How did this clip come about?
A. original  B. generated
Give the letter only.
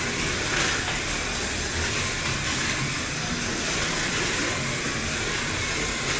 A